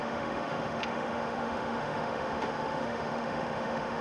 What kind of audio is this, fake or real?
fake